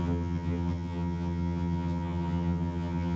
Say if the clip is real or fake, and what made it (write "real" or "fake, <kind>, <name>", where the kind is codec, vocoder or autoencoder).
fake, vocoder, HiFi-GAN